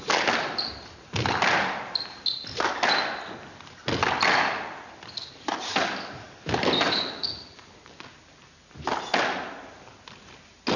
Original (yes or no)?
yes